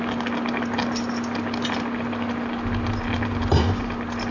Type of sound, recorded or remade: recorded